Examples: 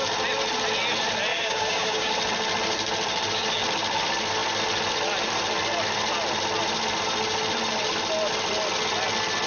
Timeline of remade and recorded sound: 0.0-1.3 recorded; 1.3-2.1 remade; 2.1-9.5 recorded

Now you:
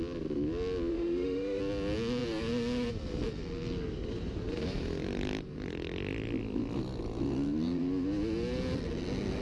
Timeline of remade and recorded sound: 0.0-0.9 recorded; 0.9-1.6 remade; 1.6-9.4 recorded

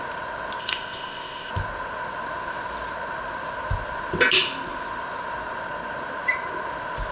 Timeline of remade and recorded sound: 0.0-0.6 recorded; 0.6-1.5 remade; 1.5-7.1 recorded

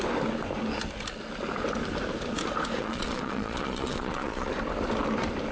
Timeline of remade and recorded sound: 0.0-2.8 recorded; 2.8-4.5 remade; 4.5-5.5 recorded

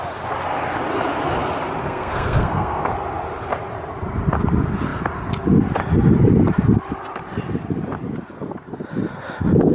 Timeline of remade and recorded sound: 0.0-1.8 recorded; 1.8-2.9 remade; 2.9-9.7 recorded

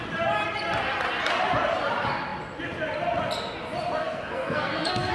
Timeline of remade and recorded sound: 0.0-4.0 recorded; 4.0-5.1 remade

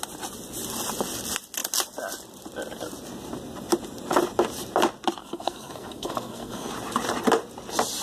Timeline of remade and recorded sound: 0.0-5.2 recorded; 5.2-6.7 remade; 6.7-8.0 recorded

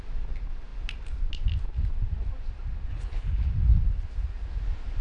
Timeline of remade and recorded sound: 0.0-2.9 recorded; 2.9-3.5 remade; 3.5-5.0 recorded